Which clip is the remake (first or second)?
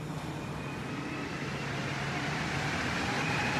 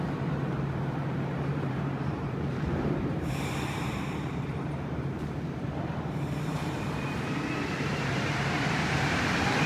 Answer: second